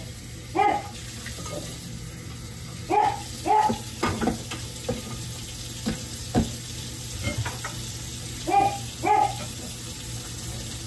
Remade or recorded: recorded